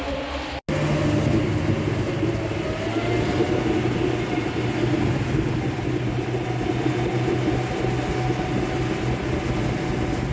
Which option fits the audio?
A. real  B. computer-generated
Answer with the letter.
A